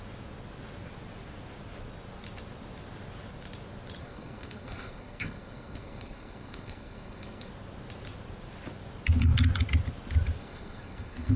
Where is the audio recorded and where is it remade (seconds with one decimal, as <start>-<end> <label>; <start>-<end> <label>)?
0.0-4.0 recorded; 4.0-7.5 remade; 7.5-10.4 recorded; 10.4-11.4 remade